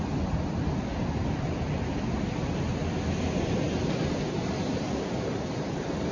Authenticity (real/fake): real